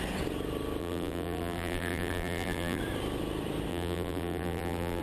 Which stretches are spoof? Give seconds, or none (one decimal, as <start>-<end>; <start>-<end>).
0.8-2.8; 3.7-5.0